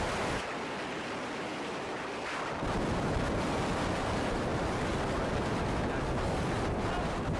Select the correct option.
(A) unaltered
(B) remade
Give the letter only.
A